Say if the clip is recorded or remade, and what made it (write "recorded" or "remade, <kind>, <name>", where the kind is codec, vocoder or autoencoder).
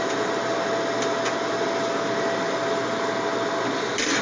recorded